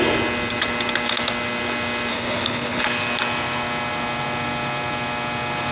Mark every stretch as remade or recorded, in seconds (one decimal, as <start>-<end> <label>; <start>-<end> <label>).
0.0-2.1 recorded; 2.1-2.8 remade; 2.8-5.7 recorded

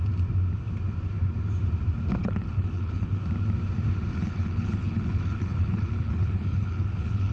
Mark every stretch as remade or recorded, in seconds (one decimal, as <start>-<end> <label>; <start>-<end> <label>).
0.0-2.2 recorded; 2.2-3.2 remade; 3.2-4.1 recorded; 4.1-7.3 remade

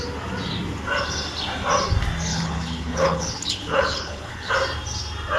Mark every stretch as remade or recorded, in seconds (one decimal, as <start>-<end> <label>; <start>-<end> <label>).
0.0-2.3 recorded; 2.3-4.5 remade; 4.5-5.4 recorded

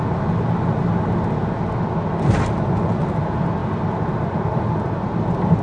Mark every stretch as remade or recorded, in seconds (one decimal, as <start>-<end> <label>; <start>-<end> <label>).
0.0-5.6 recorded

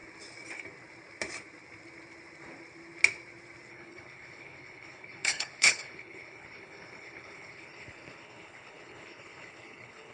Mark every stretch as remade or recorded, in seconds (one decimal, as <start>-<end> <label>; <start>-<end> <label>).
0.0-3.7 recorded; 3.7-10.1 remade

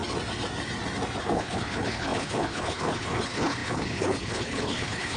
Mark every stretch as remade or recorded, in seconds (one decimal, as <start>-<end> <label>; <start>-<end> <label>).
0.0-1.2 recorded; 1.2-5.2 remade